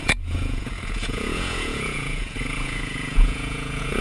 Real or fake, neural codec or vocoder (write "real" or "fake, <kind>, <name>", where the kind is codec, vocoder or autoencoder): fake, vocoder, Vocos